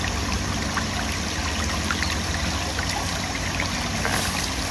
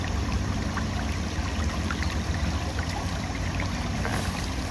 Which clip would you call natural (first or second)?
first